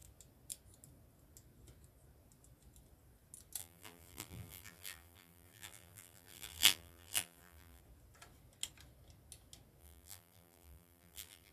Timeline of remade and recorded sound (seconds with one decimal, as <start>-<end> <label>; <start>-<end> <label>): 0.0-3.6 recorded; 3.6-7.8 remade; 7.8-9.8 recorded; 9.8-11.5 remade